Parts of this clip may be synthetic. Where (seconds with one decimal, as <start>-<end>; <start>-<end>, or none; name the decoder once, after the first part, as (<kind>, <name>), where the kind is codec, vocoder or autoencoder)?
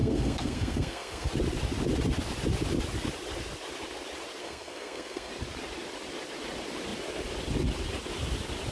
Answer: 0.0-1.3 (codec, SNAC); 4.4-5.3